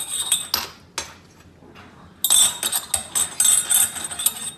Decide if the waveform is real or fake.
real